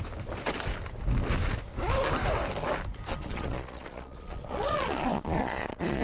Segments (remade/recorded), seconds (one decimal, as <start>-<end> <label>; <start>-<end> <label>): 0.0-3.1 recorded; 3.1-6.0 remade